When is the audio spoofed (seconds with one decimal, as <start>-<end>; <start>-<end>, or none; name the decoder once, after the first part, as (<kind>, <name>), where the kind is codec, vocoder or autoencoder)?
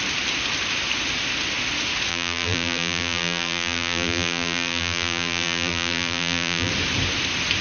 2.1-6.7 (vocoder, BigVGAN v2)